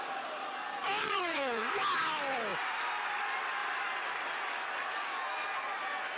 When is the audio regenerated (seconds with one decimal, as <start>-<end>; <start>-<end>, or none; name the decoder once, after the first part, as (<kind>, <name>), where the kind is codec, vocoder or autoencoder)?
1.0-1.7 (vocoder, HiFi-GAN)